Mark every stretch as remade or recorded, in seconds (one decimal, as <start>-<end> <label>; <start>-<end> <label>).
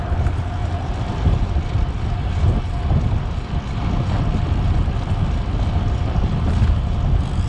0.0-0.6 recorded; 0.6-1.5 remade; 1.5-7.5 recorded